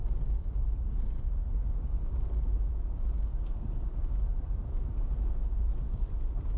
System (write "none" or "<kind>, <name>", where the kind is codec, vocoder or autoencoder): none